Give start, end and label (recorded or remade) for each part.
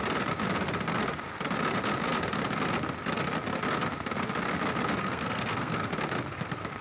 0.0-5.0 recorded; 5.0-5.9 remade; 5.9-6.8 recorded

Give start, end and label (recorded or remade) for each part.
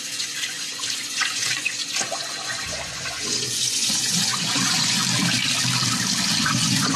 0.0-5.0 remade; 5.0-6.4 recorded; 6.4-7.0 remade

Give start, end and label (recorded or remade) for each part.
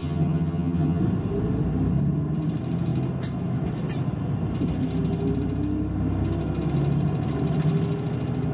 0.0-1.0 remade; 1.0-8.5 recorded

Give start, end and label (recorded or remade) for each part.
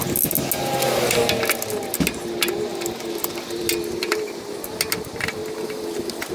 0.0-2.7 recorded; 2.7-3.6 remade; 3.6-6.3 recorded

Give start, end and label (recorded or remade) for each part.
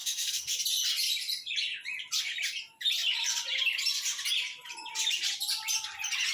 0.0-0.5 remade; 0.5-6.3 recorded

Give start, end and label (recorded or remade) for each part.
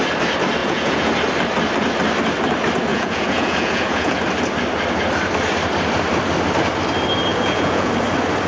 0.0-0.6 recorded; 0.6-1.1 remade; 1.1-2.9 recorded; 2.9-4.2 remade; 4.2-7.3 recorded; 7.3-7.9 remade; 7.9-8.5 recorded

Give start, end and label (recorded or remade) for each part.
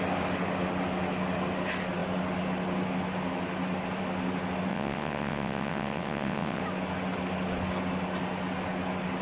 0.0-4.7 recorded; 4.7-6.6 remade; 6.6-9.2 recorded